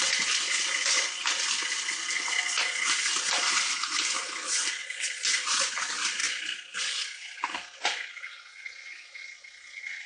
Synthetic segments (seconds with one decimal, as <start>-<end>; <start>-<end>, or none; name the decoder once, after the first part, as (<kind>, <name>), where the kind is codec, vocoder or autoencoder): none

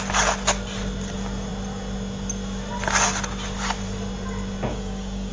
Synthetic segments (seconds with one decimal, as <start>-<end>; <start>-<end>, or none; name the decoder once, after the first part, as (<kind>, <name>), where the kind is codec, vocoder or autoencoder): 4.7-5.3 (codec, DAC)